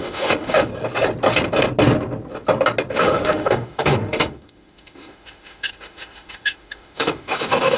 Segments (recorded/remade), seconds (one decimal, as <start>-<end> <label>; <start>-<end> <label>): 0.0-0.7 remade; 0.7-2.9 recorded; 2.9-7.8 remade